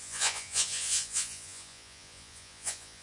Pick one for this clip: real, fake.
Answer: fake